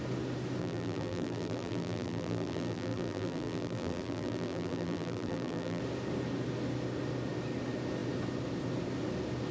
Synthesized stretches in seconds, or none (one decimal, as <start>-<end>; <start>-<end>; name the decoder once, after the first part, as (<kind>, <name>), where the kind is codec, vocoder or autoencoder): 0.6-5.8 (vocoder, BigVGAN v2)